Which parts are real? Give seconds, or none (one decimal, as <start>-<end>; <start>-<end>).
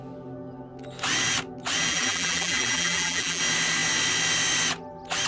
0.0-1.9; 3.4-5.3